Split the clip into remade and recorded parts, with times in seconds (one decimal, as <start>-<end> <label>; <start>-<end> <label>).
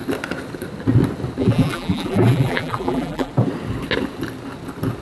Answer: 0.0-1.4 recorded; 1.4-3.3 remade; 3.3-5.0 recorded